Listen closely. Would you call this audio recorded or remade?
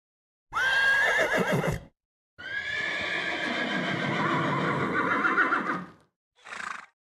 recorded